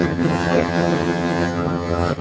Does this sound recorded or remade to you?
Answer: remade